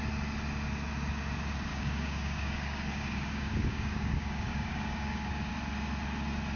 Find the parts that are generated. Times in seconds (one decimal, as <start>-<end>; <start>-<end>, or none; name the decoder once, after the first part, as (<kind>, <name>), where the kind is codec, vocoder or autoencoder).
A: 1.7-5.5 (codec, DAC)